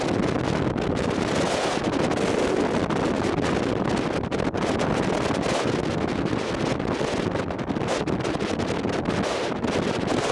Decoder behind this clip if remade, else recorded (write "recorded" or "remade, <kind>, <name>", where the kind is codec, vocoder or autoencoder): recorded